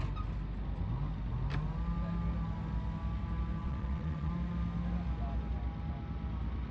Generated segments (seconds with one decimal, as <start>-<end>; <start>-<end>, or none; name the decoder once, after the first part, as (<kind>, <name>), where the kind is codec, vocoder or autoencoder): 3.6-4.3 (vocoder, WaveNeXt)